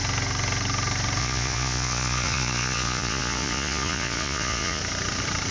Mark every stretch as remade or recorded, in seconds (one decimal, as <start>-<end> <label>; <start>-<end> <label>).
0.0-1.2 recorded; 1.2-4.8 remade; 4.8-5.5 recorded